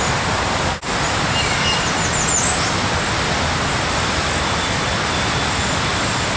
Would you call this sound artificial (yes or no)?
no